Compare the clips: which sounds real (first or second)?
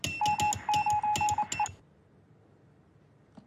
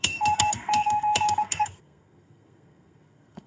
first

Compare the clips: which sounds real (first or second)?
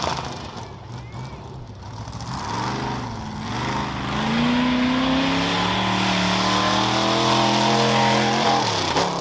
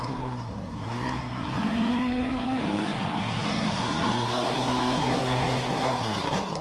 first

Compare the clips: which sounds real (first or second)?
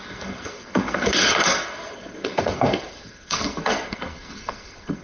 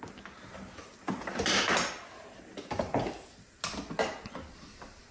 second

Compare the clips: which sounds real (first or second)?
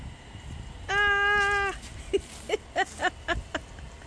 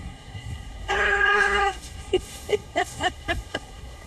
first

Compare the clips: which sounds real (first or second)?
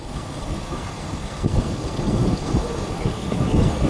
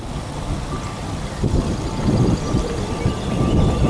second